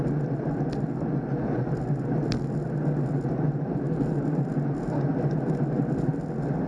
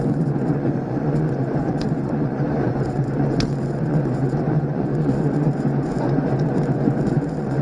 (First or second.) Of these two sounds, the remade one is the second